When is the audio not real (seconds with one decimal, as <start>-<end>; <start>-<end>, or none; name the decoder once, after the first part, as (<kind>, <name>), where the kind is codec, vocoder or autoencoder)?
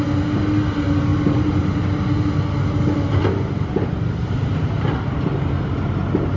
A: none